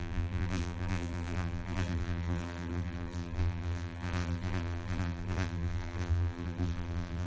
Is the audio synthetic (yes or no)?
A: yes